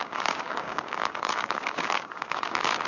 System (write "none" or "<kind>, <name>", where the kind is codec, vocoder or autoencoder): codec, DAC